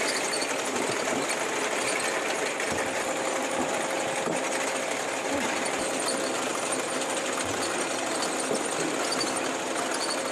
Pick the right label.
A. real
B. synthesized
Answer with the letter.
A